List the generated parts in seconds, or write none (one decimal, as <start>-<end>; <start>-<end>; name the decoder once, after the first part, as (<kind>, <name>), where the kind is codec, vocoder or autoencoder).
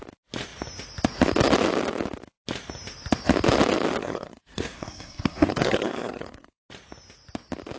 4.0-6.6 (codec, SNAC)